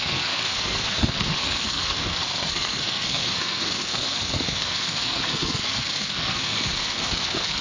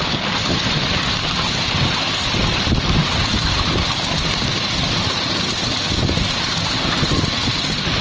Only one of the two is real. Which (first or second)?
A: second